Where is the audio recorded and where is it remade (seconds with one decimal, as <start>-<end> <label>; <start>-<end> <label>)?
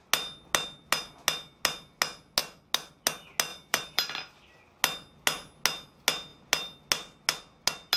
0.0-3.5 recorded; 3.5-4.1 remade; 4.1-8.0 recorded